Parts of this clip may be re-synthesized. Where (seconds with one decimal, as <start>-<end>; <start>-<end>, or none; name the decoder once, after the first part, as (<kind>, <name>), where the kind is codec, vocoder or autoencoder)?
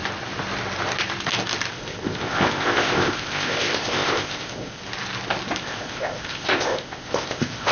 1.7-4.8 (codec, ZipCodec); 5.6-7.7